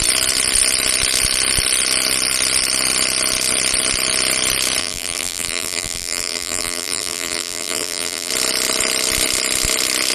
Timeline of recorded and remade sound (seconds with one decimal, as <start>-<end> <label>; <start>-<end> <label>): 0.0-4.8 recorded; 4.8-8.3 remade; 8.3-10.1 recorded